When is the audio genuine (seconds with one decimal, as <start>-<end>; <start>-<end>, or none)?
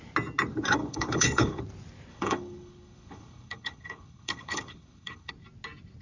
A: 0.0-0.8; 1.6-2.1; 5.3-6.0